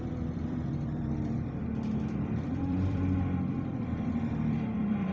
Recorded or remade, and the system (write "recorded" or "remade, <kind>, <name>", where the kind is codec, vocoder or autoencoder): remade, vocoder, BigVGAN v2